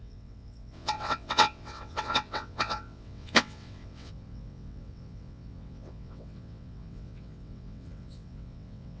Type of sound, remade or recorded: remade